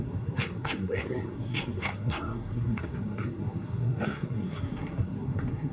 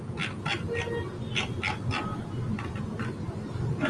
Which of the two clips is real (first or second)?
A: second